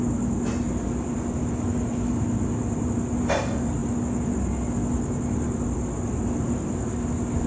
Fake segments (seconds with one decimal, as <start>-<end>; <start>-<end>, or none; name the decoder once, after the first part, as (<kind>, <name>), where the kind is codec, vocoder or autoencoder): none